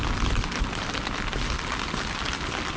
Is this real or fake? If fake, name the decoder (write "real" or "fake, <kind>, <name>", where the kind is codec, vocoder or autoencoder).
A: real